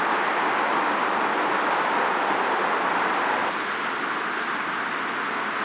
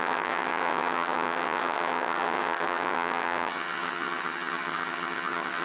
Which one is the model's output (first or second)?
second